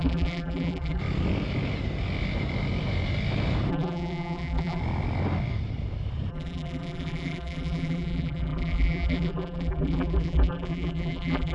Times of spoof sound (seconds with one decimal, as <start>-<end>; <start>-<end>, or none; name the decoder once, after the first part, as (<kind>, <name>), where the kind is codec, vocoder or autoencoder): 0.0-1.0 (vocoder, BigVGAN v2); 3.7-4.8; 6.3-11.5